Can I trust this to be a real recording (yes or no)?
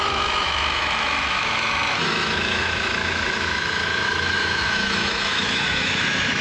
no